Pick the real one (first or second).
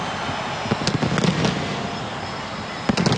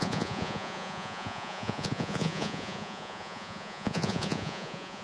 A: first